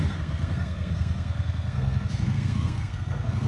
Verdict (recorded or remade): remade